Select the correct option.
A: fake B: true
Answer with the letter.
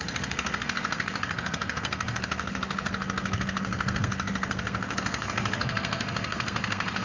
A